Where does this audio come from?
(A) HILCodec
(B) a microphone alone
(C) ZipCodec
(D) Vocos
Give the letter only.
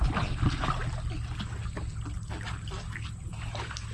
B